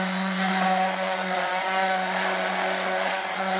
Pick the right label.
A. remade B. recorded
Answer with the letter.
A